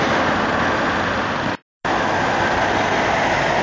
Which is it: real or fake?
real